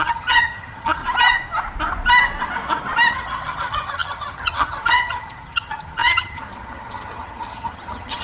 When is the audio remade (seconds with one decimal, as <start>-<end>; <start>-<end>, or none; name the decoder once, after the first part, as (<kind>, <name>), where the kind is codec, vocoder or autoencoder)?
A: 0.0-1.0 (vocoder, HiFi-GAN); 3.1-8.2